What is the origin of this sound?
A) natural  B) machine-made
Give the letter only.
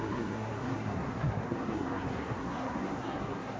B